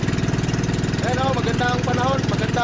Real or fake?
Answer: real